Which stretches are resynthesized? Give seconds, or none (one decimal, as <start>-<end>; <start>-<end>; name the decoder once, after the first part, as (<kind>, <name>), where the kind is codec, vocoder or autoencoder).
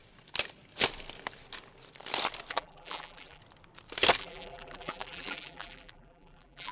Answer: 2.5-3.4 (vocoder, BigVGAN v2); 4.2-6.7